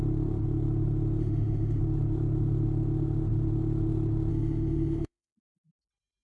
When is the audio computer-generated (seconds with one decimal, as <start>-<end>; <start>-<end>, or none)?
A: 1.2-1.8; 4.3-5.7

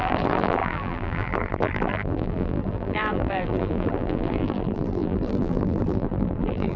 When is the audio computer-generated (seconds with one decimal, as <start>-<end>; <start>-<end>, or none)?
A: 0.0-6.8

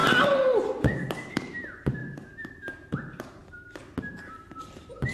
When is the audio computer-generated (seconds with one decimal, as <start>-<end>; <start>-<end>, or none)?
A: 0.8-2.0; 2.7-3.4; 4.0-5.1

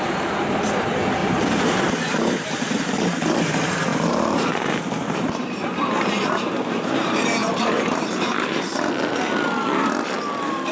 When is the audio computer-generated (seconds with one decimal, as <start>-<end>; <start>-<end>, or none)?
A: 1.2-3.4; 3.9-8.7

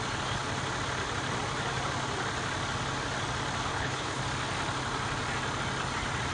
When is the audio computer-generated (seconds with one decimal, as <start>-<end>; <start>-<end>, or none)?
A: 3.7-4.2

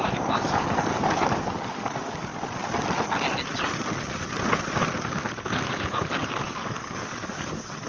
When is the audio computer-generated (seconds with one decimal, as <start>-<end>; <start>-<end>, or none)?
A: 0.0-2.3; 5.0-7.9